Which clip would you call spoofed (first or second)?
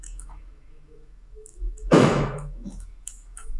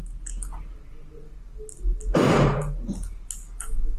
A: first